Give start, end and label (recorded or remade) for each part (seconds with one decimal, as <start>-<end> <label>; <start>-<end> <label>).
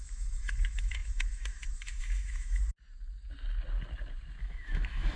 0.0-2.6 remade; 2.6-4.4 recorded; 4.4-5.2 remade